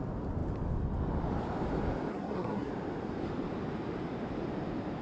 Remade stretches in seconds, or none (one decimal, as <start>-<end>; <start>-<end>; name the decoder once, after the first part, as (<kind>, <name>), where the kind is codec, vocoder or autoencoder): 2.1-2.7 (codec, SNAC)